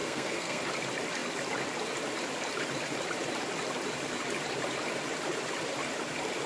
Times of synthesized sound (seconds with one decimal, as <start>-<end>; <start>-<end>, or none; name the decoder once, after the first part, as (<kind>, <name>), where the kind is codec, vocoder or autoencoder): 0.0-0.7 (codec, SNAC)